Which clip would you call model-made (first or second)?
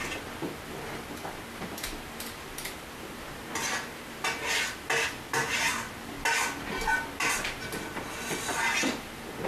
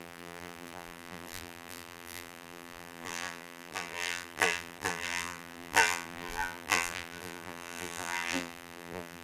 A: second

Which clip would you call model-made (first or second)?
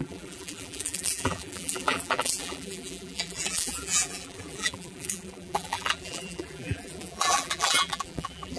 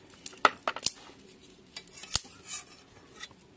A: first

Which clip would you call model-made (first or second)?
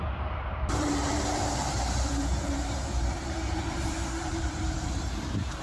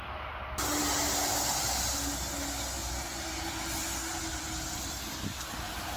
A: first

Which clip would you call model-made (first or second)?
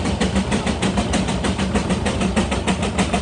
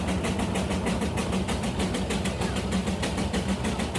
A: first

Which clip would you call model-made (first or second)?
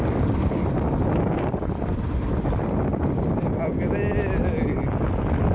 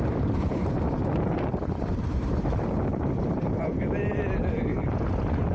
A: second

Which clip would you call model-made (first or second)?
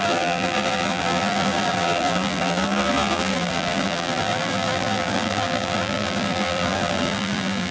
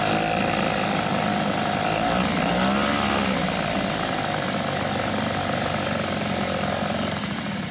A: first